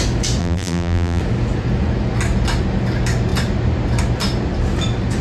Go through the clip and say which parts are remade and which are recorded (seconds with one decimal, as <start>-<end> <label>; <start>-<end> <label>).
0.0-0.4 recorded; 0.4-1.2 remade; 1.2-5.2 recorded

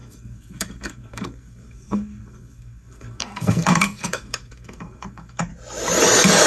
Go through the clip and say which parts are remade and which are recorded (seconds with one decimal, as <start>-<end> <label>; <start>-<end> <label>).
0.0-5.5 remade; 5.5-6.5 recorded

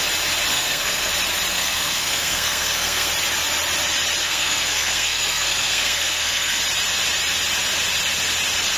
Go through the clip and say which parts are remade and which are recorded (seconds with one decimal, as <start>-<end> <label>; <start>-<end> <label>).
0.0-0.5 recorded; 0.5-1.1 remade; 1.1-1.5 recorded; 1.5-3.1 remade; 3.1-4.2 recorded; 4.2-6.6 remade; 6.6-8.8 recorded

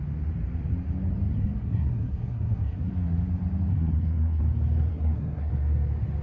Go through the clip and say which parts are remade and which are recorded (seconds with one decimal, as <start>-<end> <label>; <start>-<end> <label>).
0.0-1.3 recorded; 1.3-2.9 remade; 2.9-3.7 recorded; 3.7-4.4 remade; 4.4-4.9 recorded; 4.9-5.5 remade; 5.5-6.2 recorded

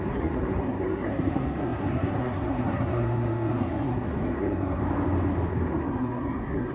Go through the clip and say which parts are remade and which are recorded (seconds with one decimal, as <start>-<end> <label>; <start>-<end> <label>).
0.0-4.8 remade; 4.8-5.5 recorded; 5.5-6.7 remade